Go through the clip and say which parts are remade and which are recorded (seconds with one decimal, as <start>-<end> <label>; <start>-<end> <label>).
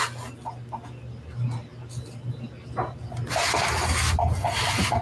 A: 0.0-5.0 recorded